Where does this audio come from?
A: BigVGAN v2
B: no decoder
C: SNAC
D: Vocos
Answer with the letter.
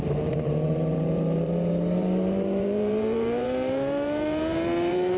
A